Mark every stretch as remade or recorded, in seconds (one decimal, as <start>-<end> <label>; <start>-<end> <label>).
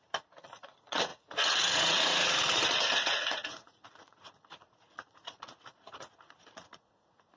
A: 0.0-7.4 remade